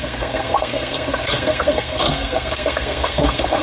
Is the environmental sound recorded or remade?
remade